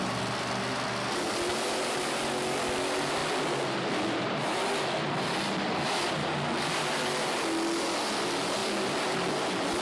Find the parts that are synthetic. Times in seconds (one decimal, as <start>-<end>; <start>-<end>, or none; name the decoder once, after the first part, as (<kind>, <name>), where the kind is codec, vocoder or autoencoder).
none